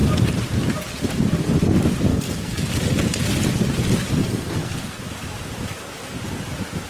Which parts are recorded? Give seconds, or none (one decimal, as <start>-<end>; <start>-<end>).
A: 0.0-2.1; 2.7-4.2; 5.0-6.9